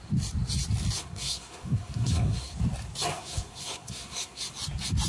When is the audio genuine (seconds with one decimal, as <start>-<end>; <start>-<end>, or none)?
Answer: 0.0-1.0; 2.5-3.1; 4.4-5.1